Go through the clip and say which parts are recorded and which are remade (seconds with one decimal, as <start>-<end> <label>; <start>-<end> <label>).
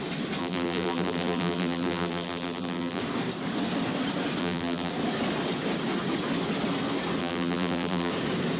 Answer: 0.0-0.4 recorded; 0.4-3.0 remade; 3.0-4.4 recorded; 4.4-4.9 remade; 4.9-7.2 recorded; 7.2-8.1 remade; 8.1-8.6 recorded